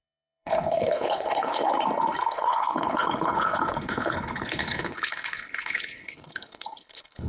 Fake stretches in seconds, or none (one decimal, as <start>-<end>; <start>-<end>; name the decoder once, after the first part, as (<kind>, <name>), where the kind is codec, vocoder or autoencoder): 0.0-1.7 (codec, HILCodec); 2.3-7.3